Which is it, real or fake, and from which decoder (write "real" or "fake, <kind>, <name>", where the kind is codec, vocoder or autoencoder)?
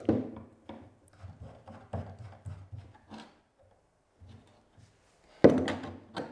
real